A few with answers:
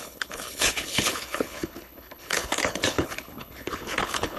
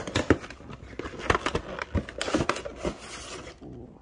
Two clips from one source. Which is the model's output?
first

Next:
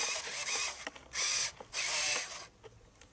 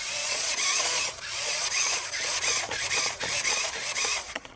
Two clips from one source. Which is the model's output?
second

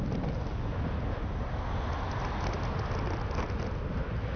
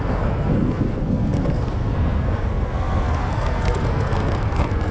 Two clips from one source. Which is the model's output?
second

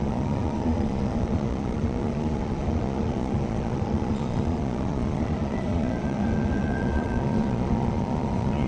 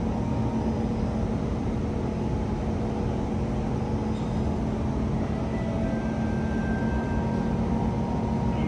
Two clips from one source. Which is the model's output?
first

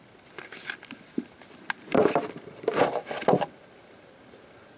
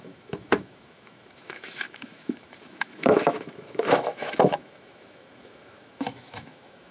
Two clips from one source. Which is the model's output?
second